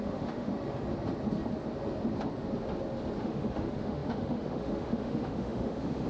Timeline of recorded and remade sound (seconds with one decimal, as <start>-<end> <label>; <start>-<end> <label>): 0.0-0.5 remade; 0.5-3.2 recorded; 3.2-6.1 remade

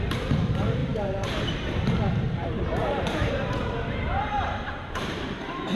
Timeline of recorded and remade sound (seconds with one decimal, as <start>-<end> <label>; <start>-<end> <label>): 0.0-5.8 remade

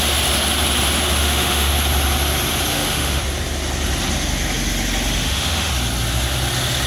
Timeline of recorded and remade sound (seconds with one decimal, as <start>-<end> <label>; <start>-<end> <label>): 0.0-1.2 recorded; 1.2-1.7 remade; 1.7-2.7 recorded; 2.7-3.2 remade; 3.2-5.2 recorded; 5.2-5.7 remade; 5.7-6.9 recorded

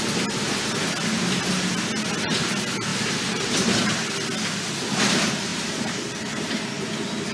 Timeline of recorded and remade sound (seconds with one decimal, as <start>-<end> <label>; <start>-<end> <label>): 0.0-2.9 recorded; 2.9-4.1 remade; 4.1-5.5 recorded; 5.5-7.3 remade

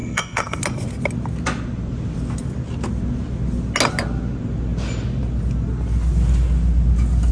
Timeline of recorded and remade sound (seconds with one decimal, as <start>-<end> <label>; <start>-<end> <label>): 0.0-0.6 remade; 0.6-7.3 recorded